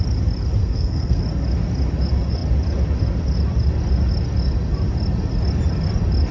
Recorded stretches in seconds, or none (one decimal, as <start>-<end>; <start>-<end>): 0.0-0.6; 1.2-6.3